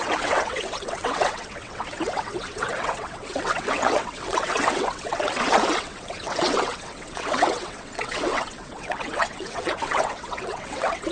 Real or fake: fake